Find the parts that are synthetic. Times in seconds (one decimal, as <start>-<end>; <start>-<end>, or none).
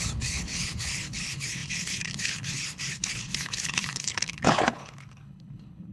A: 0.0-5.9